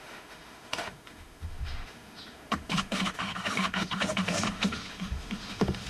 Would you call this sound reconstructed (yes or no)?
yes